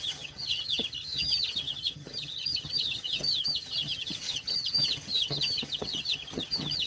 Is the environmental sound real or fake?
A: fake